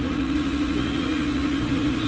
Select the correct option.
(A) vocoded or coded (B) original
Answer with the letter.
A